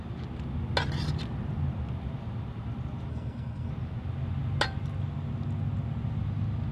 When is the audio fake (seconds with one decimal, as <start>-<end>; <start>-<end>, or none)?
3.1-3.7